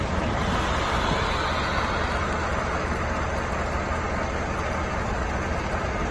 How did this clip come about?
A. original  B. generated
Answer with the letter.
A